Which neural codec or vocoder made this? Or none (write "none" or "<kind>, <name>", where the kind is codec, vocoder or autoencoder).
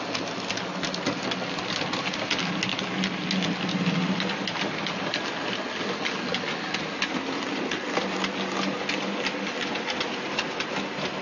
none